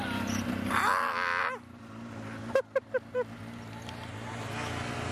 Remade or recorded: recorded